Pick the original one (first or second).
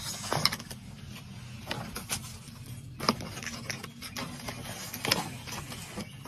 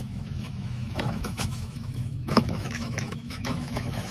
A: first